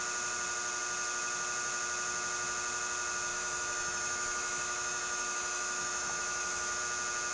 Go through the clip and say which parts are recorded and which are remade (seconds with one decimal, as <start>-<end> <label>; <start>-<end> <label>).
0.0-3.3 recorded; 3.3-6.8 remade; 6.8-7.3 recorded